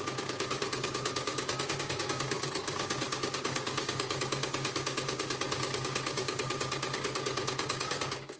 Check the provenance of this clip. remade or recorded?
remade